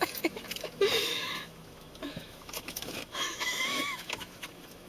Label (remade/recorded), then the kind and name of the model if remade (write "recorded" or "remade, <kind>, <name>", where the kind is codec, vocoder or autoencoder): remade, autoencoder, DAC-VAE